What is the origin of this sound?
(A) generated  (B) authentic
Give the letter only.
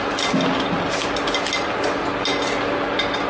B